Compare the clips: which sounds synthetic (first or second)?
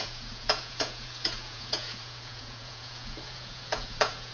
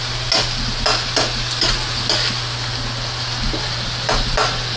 first